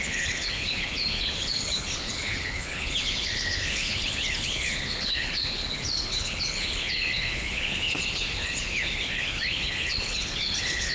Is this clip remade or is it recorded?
remade